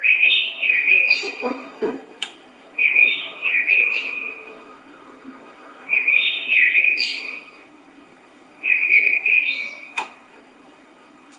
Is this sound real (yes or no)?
no